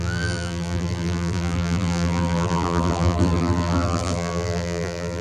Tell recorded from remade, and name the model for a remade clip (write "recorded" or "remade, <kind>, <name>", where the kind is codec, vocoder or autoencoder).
remade, vocoder, BigVGAN v2